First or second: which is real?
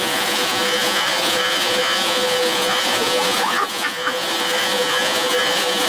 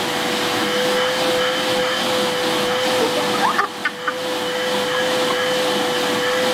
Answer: second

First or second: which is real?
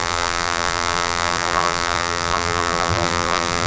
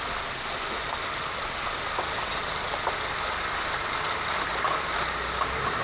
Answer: second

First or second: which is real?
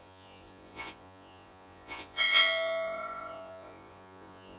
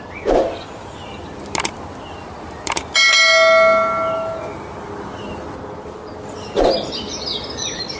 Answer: second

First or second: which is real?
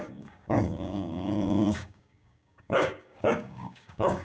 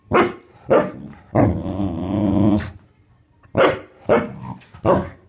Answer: second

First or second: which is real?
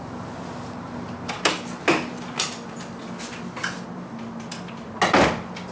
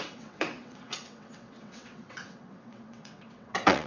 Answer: first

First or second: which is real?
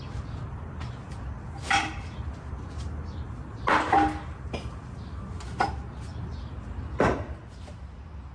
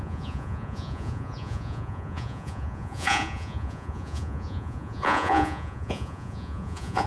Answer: first